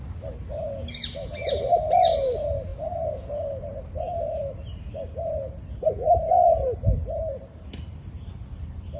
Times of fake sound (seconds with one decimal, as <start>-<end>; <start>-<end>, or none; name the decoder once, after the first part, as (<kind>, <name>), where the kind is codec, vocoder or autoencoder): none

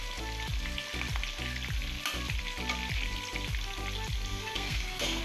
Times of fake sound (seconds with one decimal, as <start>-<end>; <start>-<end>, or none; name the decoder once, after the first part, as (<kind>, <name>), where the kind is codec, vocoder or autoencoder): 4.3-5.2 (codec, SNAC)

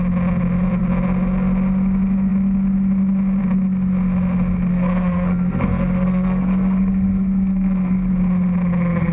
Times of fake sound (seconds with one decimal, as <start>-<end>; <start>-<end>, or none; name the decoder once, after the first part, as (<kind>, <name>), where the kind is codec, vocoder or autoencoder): 4.7-8.1 (codec, SNAC)

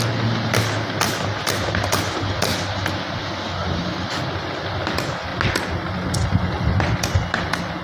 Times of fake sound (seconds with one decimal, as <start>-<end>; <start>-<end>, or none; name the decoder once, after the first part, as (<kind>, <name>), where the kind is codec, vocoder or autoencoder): none

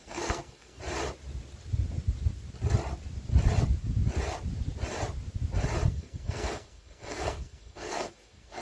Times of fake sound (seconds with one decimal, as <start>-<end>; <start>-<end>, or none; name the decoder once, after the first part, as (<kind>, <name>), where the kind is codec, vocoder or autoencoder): 0.0-0.8 (codec, SNAC); 5.9-8.6